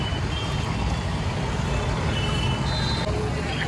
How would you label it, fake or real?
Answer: real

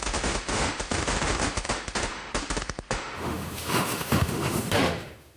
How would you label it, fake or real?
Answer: fake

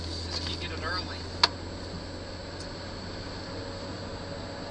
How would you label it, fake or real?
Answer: real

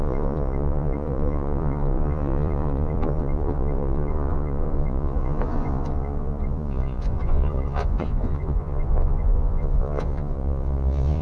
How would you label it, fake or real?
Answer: fake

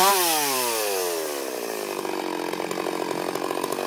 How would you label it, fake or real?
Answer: fake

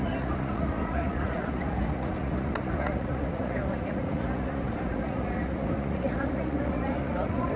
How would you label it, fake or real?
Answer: fake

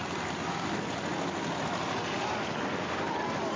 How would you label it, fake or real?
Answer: real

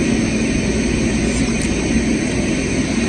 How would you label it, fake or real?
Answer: real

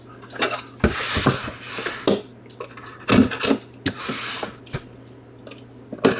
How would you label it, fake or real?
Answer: real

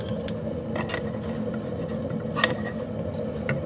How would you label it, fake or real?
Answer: real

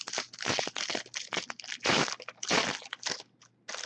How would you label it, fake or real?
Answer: real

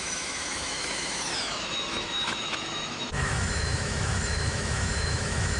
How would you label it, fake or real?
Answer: fake